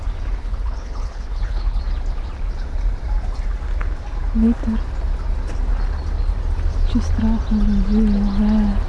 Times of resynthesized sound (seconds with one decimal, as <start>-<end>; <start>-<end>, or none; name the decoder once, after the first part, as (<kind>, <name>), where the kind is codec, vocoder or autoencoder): 0.4-1.8 (codec, HILCodec)